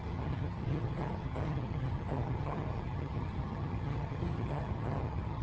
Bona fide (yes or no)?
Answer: no